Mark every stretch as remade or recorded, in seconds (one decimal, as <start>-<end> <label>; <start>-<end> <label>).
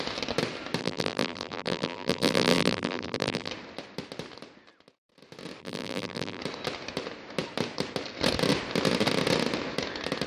0.0-0.8 recorded; 0.8-3.5 remade; 3.5-5.6 recorded; 5.6-6.4 remade; 6.4-10.3 recorded